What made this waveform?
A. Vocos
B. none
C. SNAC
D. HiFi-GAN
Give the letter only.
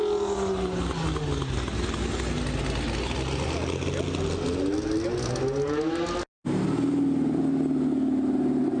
B